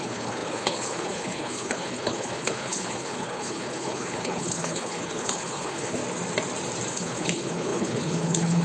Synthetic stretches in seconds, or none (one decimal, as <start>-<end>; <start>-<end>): 0.0-6.0; 6.9-8.6